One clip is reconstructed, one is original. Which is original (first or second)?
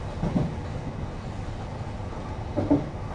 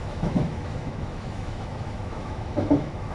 first